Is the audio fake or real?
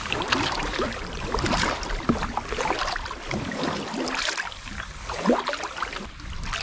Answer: real